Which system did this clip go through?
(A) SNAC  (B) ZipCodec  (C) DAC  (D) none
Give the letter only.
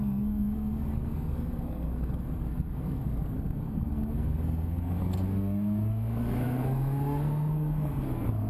A